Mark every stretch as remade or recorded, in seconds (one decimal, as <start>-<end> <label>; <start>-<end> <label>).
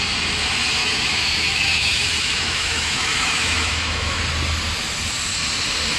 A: 0.0-0.8 recorded; 0.8-4.2 remade; 4.2-6.0 recorded